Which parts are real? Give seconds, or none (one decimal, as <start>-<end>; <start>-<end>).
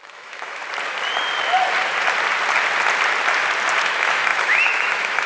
0.6-3.8